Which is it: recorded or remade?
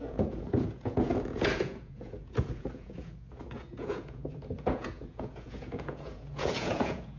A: remade